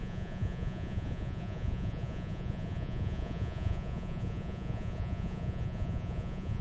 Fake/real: fake